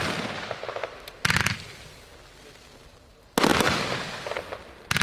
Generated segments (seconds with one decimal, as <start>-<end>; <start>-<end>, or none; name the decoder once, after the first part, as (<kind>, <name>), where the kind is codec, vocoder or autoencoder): none